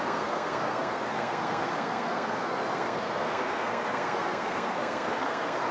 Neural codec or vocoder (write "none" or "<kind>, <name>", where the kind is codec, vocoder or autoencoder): codec, SNAC